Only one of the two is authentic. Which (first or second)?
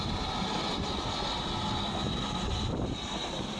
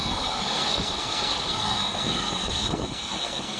first